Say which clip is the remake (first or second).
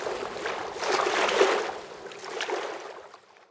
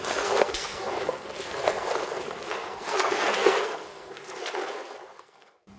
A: second